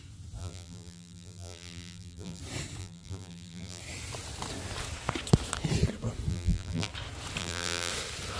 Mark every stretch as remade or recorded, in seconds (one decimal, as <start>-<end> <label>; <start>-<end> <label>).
0.0-0.4 recorded; 0.4-2.4 remade; 2.4-2.8 recorded; 2.8-3.8 remade; 3.8-6.3 recorded; 6.3-6.9 remade; 6.9-7.4 recorded; 7.4-7.9 remade; 7.9-8.4 recorded